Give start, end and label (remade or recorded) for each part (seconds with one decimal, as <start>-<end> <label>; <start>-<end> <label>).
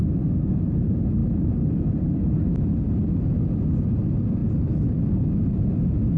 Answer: 0.0-6.2 recorded